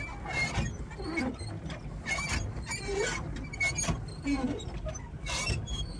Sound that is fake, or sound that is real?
real